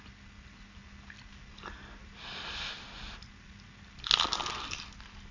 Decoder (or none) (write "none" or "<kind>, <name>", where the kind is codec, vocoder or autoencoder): none